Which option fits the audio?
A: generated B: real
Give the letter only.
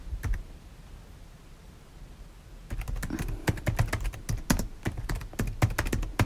B